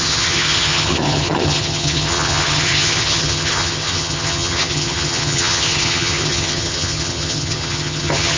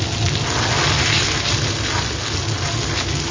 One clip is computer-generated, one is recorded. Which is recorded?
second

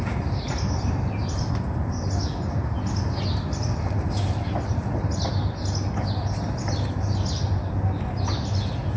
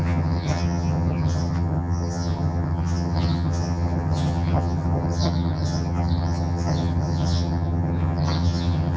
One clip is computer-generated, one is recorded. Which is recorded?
first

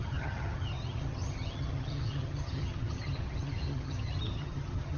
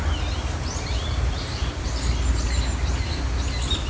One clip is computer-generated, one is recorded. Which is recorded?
second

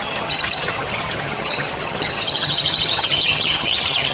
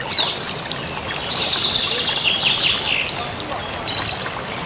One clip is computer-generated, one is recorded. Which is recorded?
second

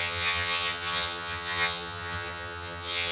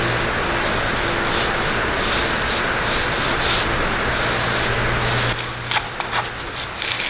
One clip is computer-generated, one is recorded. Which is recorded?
second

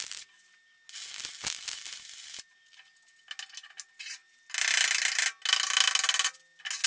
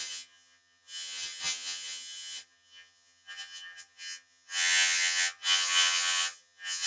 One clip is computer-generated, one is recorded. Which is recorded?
first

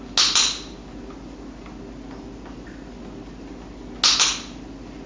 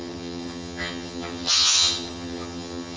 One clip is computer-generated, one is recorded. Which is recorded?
first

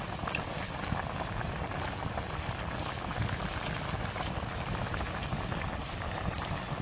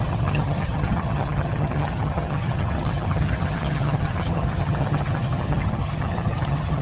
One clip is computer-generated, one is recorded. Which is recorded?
first